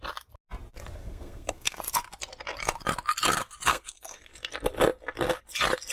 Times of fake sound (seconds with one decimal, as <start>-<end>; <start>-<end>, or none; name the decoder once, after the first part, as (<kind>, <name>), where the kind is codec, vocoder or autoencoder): 1.0-1.8 (codec, SNAC); 3.7-4.2